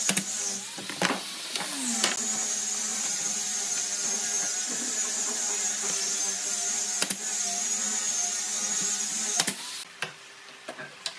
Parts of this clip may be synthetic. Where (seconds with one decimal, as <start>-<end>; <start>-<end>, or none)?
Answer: 2.9-3.6